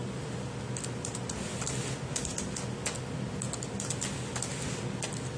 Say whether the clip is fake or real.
real